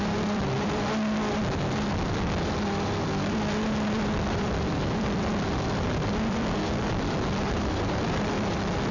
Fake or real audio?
fake